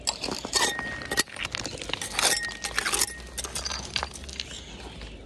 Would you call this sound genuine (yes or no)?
yes